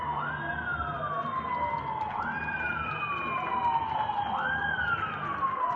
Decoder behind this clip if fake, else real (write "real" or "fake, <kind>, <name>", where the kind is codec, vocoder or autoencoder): real